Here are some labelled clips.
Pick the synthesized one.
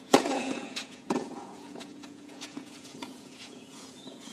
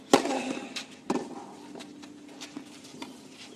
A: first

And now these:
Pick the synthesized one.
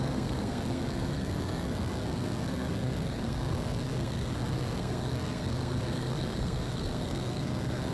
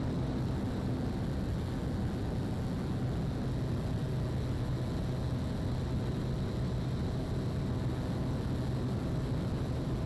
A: first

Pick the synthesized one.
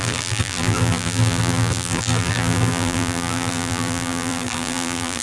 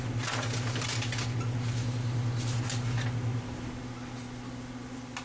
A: first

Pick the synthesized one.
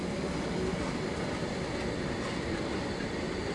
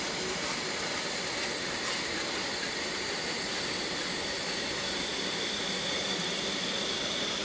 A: second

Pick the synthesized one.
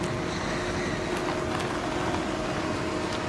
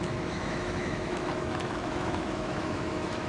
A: second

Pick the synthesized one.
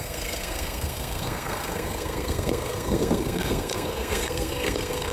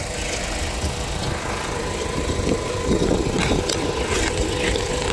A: first